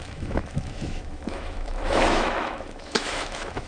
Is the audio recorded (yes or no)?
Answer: no